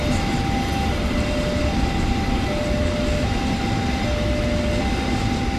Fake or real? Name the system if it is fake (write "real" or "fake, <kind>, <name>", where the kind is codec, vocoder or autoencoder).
real